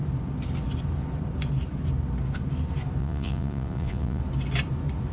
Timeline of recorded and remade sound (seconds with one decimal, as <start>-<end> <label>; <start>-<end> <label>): 0.0-3.0 recorded; 3.0-4.2 remade; 4.2-5.1 recorded